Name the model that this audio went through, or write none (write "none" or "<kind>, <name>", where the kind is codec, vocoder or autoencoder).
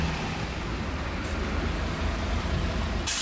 none